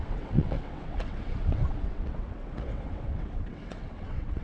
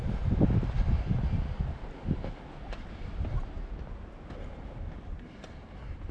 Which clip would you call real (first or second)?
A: second